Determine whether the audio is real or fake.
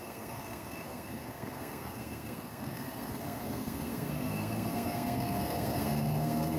fake